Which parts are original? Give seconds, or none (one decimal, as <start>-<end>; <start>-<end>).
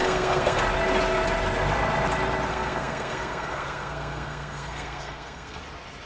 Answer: 0.6-2.5; 5.6-6.1